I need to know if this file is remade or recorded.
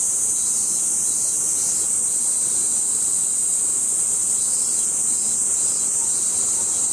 recorded